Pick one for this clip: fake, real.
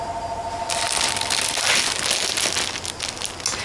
real